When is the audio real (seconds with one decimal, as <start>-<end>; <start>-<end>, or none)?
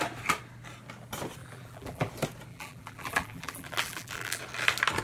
0.0-1.4; 2.1-2.5; 4.4-5.0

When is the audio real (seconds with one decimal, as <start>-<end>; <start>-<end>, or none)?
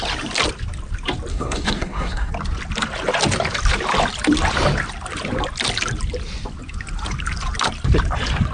0.0-1.3; 2.3-8.5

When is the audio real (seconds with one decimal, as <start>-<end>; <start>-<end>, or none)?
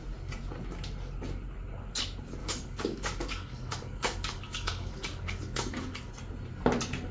0.0-2.4; 6.1-7.1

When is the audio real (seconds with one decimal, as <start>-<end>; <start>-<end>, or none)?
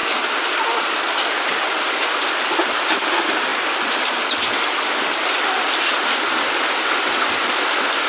none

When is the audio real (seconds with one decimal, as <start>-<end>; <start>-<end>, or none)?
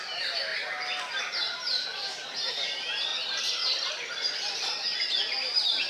0.5-1.2; 1.9-2.5; 3.1-4.6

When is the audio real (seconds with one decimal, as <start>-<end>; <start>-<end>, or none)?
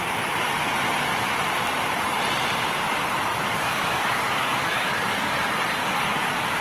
0.0-3.3; 5.3-5.8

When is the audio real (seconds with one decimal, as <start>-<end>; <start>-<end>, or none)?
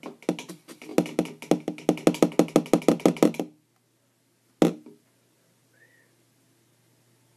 0.0-7.4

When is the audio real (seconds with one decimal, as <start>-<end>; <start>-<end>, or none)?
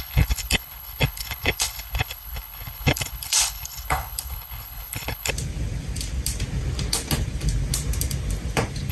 5.3-8.9